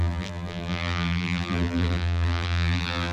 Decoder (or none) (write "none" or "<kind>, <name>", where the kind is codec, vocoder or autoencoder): vocoder, BigVGAN v2